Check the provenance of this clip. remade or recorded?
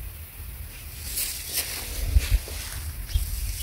recorded